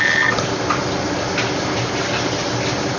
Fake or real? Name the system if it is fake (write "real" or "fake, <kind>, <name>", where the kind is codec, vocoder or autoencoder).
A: real